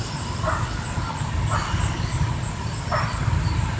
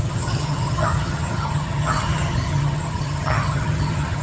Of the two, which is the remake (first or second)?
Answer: second